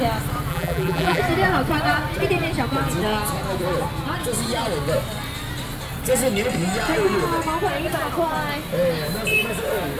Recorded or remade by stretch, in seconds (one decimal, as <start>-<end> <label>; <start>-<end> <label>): 0.0-0.5 recorded; 0.5-1.2 remade; 1.2-10.0 recorded